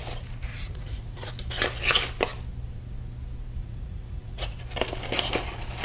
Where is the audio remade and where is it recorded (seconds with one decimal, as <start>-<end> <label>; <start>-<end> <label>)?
0.0-0.5 recorded; 0.5-1.3 remade; 1.3-3.6 recorded; 3.6-4.6 remade; 4.6-5.8 recorded